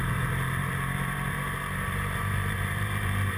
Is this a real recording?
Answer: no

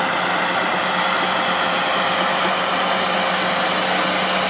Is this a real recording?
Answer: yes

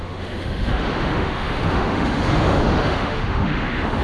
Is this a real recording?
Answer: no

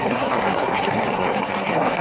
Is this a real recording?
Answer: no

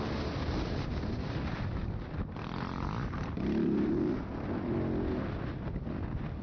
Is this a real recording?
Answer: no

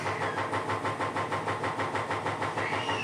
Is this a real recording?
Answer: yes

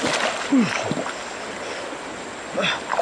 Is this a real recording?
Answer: yes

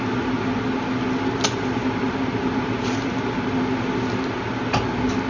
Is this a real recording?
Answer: yes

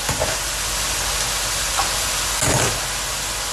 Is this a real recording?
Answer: yes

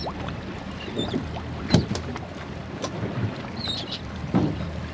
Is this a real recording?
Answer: no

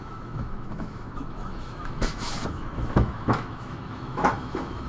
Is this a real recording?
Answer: no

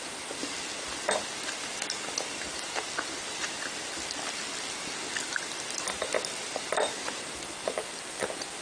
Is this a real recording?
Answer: yes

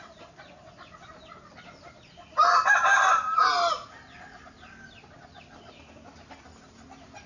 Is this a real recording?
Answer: yes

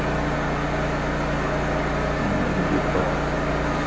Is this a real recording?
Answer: yes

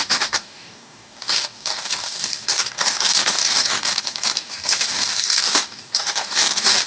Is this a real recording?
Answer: no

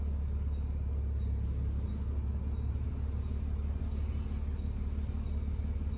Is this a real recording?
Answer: yes